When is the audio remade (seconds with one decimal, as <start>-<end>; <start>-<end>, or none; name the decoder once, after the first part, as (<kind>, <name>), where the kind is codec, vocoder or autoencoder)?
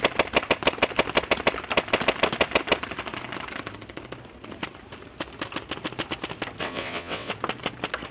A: 6.6-7.3 (vocoder, WaveNeXt)